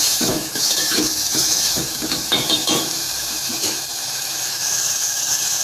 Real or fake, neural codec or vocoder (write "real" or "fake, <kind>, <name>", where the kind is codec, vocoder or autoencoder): fake, autoencoder, DAC-VAE